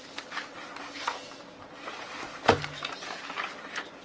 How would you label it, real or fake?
real